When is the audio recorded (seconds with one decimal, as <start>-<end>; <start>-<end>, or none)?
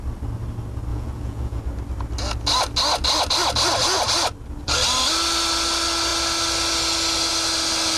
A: 0.0-0.9; 1.6-8.0